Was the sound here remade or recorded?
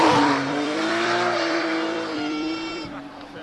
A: remade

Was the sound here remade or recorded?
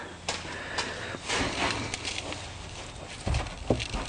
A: recorded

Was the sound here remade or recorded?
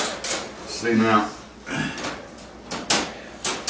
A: recorded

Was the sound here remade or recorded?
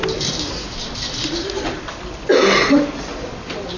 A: recorded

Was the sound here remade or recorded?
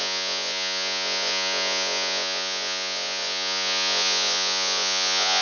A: remade